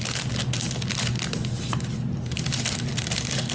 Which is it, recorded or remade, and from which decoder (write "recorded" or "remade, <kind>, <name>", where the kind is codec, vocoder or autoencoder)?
recorded